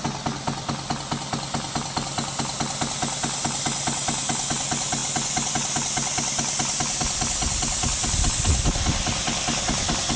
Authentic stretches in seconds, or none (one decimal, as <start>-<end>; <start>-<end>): 0.0-10.2